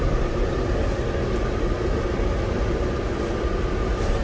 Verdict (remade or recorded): recorded